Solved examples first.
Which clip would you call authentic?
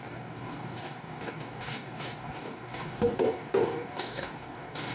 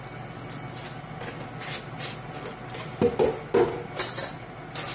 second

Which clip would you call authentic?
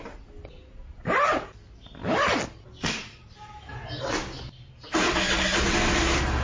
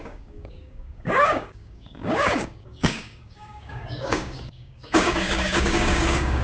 first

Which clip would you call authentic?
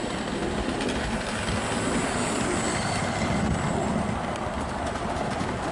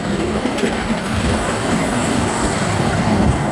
first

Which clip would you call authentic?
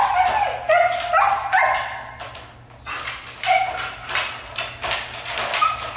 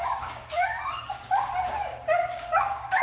first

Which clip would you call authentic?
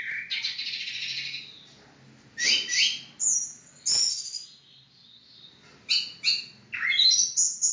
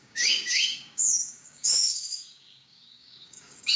first